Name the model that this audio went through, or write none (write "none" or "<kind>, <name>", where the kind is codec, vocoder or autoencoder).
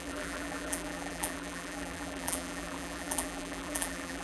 vocoder, BigVGAN v2